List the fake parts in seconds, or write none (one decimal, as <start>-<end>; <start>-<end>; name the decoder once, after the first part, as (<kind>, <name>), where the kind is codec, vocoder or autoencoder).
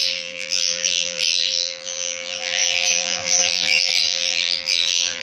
0.0-5.2 (vocoder, BigVGAN v2)